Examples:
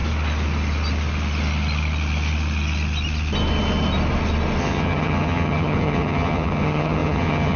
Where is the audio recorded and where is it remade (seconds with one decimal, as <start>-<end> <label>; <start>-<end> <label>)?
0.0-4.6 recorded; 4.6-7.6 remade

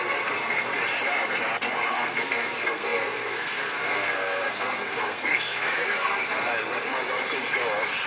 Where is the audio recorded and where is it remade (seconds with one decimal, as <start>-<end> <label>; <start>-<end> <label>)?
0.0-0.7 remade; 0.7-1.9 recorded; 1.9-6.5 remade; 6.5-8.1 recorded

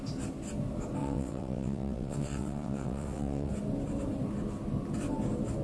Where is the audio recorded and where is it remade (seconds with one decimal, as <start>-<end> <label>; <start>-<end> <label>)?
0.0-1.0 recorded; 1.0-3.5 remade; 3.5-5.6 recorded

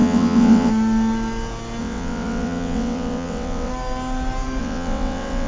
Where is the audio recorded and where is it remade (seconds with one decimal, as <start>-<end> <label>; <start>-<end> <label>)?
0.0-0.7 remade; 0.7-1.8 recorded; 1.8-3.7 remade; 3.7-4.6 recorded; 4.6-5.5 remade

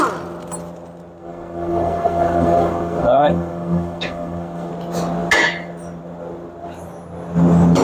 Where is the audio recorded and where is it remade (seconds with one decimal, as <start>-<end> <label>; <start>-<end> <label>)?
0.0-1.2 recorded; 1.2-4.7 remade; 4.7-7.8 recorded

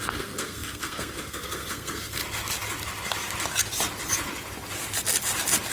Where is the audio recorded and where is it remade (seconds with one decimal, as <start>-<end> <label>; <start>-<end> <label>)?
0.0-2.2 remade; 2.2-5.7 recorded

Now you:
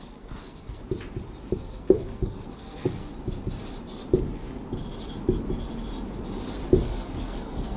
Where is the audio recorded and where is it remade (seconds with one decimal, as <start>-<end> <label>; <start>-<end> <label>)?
0.0-0.8 remade; 0.8-1.5 recorded; 1.5-3.1 remade; 3.1-6.8 recorded; 6.8-7.8 remade

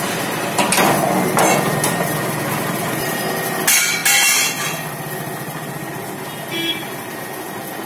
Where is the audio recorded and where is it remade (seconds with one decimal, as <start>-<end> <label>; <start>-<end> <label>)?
0.0-7.9 recorded